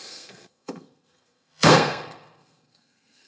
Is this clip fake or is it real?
fake